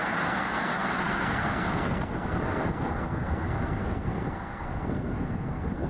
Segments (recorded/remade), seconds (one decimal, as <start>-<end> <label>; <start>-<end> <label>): 0.0-5.9 remade